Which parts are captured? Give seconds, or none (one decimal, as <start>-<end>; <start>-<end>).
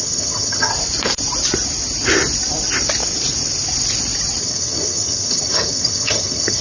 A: 0.7-4.4